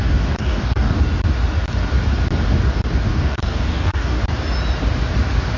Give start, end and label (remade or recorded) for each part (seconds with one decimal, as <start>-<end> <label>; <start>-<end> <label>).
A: 0.0-1.0 remade; 1.0-3.1 recorded; 3.1-4.2 remade; 4.2-5.6 recorded